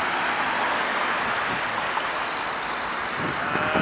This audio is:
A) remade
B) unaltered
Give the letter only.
B